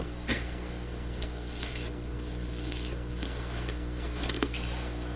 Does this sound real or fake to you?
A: fake